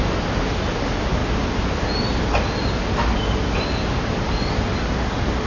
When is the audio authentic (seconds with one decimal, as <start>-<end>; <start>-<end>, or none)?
0.0-5.5